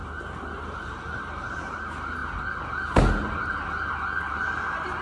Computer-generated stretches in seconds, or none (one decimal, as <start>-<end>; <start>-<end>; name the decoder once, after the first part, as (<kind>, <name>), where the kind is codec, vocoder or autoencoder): 0.6-2.2 (vocoder, BigVGAN v2); 4.2-5.0

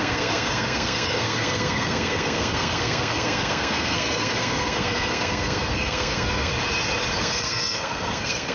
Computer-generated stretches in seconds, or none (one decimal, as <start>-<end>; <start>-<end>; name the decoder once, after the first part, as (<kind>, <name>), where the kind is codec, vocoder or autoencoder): 0.0-6.5 (codec, SNAC); 7.2-8.5

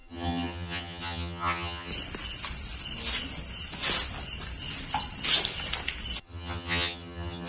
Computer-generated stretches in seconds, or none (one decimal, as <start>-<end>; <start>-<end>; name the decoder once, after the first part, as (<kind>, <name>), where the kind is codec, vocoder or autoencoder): 0.0-1.9 (vocoder, HiFi-GAN); 6.2-7.5

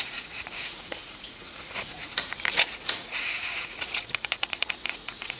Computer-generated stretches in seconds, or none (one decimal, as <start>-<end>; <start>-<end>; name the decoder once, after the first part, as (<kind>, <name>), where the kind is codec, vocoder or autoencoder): 0.0-5.4 (vocoder, Vocos)

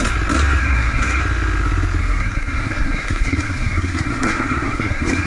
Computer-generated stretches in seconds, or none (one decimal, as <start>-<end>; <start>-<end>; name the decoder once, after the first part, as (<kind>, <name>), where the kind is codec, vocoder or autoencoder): 0.6-1.2 (codec, SNAC); 2.0-5.3

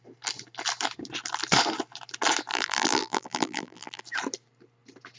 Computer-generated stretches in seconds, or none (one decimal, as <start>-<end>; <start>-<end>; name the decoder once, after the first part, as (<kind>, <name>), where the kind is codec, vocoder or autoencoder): 2.5-4.0 (vocoder, BigVGAN v2)